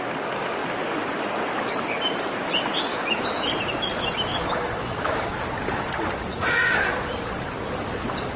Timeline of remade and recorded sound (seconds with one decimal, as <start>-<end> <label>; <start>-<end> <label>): 0.0-2.9 recorded; 2.9-3.5 remade; 3.5-4.3 recorded; 4.3-5.3 remade; 5.3-8.4 recorded